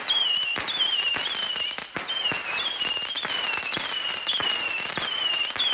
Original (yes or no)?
yes